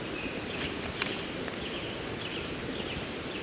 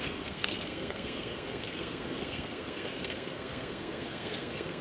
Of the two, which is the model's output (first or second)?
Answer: second